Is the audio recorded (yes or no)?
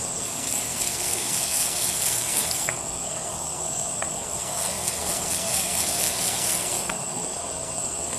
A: no